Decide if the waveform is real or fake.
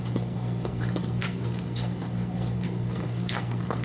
fake